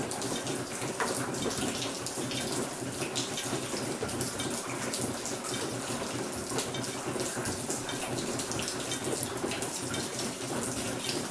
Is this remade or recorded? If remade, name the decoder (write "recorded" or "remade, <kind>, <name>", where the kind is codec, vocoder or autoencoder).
recorded